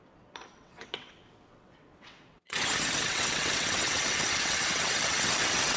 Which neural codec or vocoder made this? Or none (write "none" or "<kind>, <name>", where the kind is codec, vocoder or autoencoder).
vocoder, WaveNeXt